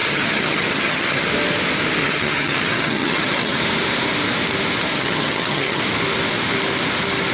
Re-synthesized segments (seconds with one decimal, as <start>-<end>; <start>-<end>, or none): 0.0-1.3; 2.0-3.6; 4.9-5.8